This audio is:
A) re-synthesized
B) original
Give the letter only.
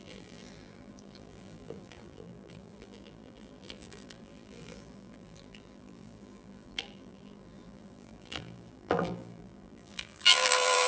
A